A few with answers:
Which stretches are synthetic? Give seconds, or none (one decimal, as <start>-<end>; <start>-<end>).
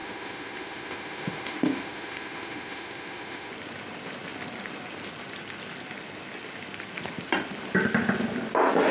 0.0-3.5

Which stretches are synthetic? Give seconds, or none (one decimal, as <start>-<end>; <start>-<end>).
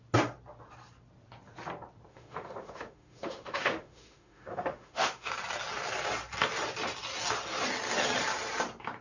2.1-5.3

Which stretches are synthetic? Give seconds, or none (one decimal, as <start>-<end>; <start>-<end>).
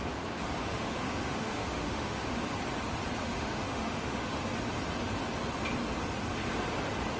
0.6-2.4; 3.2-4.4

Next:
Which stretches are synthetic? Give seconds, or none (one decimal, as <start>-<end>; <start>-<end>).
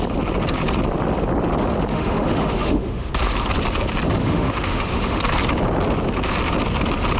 1.9-3.1; 4.2-5.2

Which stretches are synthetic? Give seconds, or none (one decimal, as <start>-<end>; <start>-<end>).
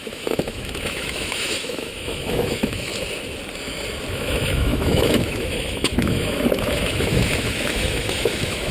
0.0-2.9; 4.1-8.7